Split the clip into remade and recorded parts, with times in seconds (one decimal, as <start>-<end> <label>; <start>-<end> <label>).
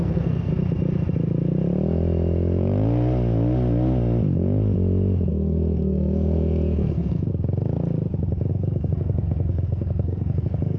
0.0-0.5 remade; 0.5-5.3 recorded; 5.3-7.3 remade; 7.3-8.5 recorded; 8.5-10.8 remade